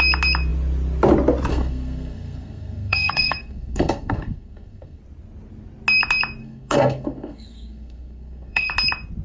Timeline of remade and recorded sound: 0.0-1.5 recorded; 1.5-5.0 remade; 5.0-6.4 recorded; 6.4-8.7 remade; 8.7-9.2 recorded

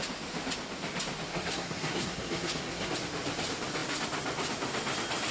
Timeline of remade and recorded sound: 0.0-1.3 recorded; 1.3-2.9 remade; 2.9-5.3 recorded

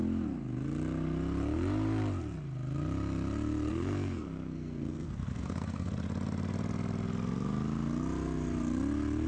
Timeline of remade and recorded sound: 0.0-3.7 recorded; 3.7-5.9 remade; 5.9-9.3 recorded

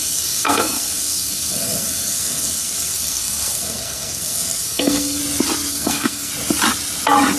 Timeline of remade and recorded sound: 0.0-5.2 remade; 5.2-5.7 recorded; 5.7-6.3 remade; 6.3-7.4 recorded

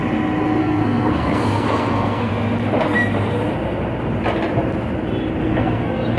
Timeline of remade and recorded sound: 0.0-0.6 recorded; 0.6-2.3 remade; 2.3-5.4 recorded; 5.4-6.2 remade